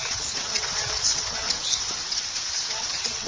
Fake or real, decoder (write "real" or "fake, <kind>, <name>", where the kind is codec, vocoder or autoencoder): fake, vocoder, WaveNeXt